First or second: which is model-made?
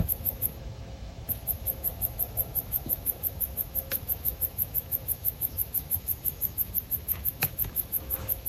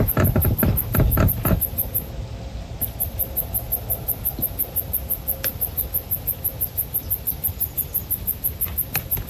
first